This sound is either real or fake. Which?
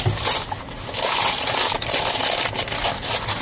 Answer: real